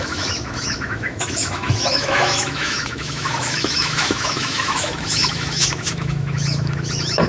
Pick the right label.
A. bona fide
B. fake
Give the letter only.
B